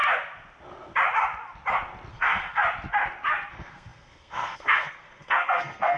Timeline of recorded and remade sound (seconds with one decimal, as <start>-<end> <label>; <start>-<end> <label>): 0.0-2.1 recorded; 2.1-2.6 remade; 2.6-3.5 recorded; 3.5-6.0 remade